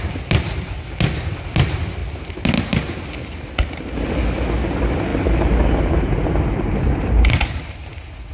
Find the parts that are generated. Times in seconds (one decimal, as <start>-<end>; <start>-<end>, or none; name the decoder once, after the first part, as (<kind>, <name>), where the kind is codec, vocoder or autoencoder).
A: none